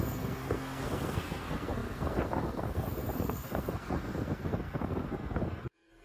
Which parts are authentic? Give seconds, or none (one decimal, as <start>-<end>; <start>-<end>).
none